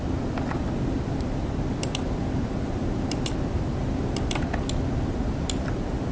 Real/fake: real